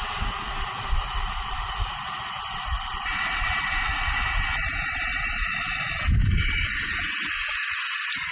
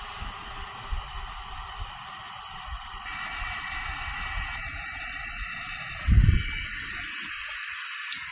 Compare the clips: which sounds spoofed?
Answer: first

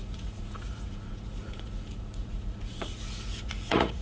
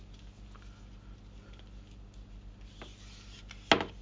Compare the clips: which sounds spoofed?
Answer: first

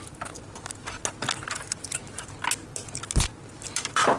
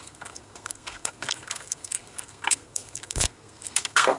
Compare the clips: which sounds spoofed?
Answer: second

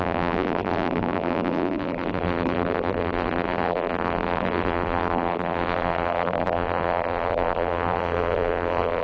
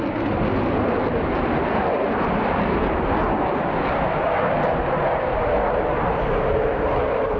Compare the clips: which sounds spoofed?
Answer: first